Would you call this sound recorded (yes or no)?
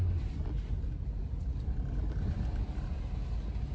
yes